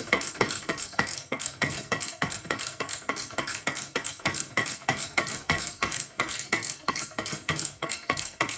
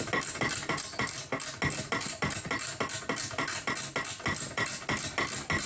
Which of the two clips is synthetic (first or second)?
first